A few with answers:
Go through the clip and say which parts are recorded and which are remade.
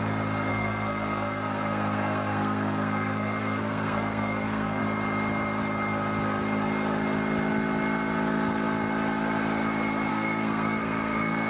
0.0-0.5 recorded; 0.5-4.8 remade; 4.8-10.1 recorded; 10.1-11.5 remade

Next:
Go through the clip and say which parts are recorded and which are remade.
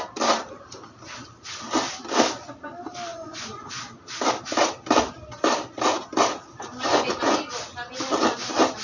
0.0-3.1 recorded; 3.1-3.7 remade; 3.7-6.9 recorded; 6.9-7.4 remade; 7.4-8.8 recorded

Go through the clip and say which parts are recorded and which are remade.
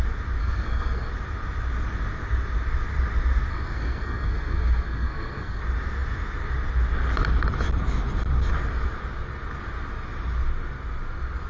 0.0-0.4 recorded; 0.4-1.1 remade; 1.1-3.5 recorded; 3.5-5.6 remade; 5.6-11.5 recorded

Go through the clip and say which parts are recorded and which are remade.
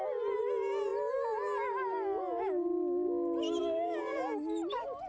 0.0-5.1 recorded